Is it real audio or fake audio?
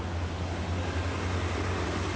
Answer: real